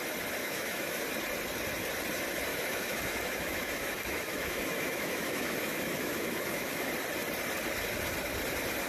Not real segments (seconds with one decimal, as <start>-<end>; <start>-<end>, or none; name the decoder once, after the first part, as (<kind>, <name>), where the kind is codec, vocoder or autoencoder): 0.4-1.0 (autoencoder, DAC-VAE); 2.5-6.9